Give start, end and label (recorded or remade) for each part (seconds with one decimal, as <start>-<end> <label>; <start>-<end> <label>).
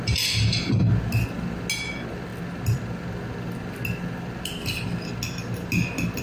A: 0.0-6.2 recorded